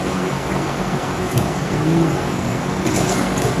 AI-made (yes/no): yes